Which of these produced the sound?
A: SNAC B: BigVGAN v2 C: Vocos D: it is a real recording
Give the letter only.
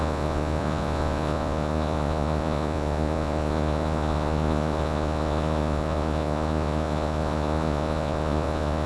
C